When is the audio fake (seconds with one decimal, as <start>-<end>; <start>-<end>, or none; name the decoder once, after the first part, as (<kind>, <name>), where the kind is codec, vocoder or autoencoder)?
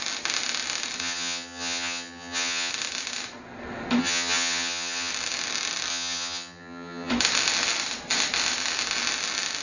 1.0-2.7 (vocoder, HiFi-GAN); 4.0-5.1; 5.9-7.1